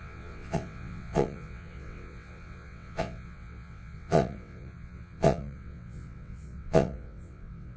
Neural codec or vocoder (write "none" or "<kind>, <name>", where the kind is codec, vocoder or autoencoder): vocoder, WaveNeXt